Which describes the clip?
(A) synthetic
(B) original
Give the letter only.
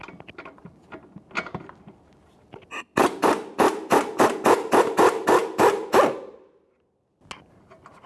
B